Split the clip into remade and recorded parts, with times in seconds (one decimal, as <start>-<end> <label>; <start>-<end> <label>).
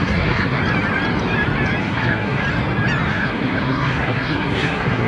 0.0-0.6 remade; 0.6-1.8 recorded; 1.8-2.4 remade; 2.4-3.1 recorded; 3.1-5.1 remade